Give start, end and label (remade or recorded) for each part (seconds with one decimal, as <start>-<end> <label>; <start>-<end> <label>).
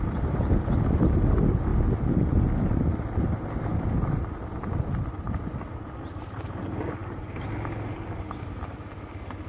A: 0.0-9.5 recorded